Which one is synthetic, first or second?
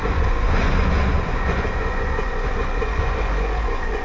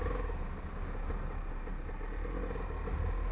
first